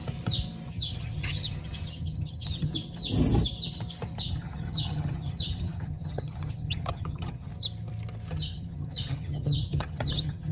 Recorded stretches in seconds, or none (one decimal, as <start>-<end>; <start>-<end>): 0.0-0.7; 2.7-4.2; 7.5-8.3